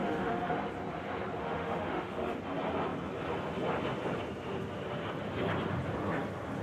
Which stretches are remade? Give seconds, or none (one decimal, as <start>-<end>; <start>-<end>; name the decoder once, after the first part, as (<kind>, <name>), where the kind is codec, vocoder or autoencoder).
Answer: 0.0-0.5 (autoencoder, DAC-VAE); 1.4-2.4